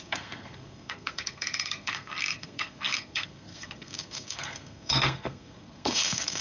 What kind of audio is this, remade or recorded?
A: remade